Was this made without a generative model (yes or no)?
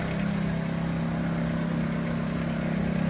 yes